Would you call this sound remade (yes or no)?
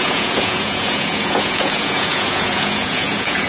yes